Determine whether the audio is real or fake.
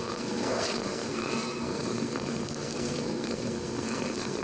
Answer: fake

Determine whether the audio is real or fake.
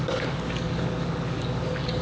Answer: fake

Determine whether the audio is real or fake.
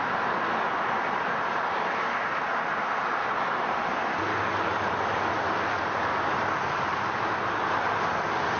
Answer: real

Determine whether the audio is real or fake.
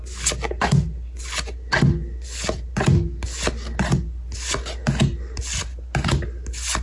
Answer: real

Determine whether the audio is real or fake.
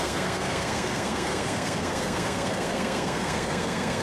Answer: fake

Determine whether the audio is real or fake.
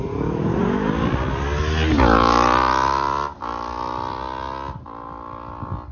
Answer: real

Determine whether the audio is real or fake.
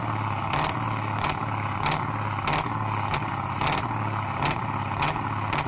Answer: real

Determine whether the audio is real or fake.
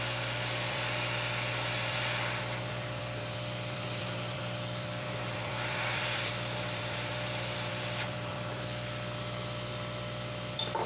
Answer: fake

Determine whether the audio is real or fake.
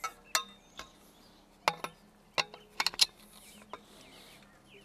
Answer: real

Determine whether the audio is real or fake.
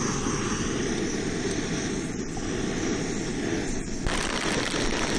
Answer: real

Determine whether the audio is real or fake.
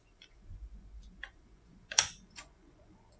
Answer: fake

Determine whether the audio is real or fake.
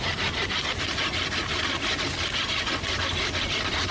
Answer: real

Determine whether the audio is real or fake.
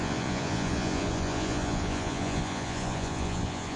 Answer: fake